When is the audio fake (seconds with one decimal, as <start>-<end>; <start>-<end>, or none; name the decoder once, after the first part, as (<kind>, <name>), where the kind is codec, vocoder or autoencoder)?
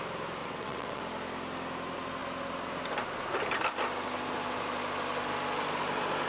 0.4-1.0 (vocoder, WaveNeXt)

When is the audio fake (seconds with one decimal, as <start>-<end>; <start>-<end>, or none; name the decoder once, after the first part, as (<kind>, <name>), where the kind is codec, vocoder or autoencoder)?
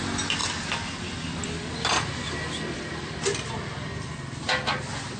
none